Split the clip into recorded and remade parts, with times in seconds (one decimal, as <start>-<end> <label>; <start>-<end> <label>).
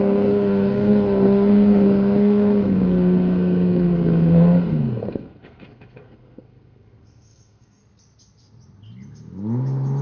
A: 0.0-7.8 remade; 7.8-10.0 recorded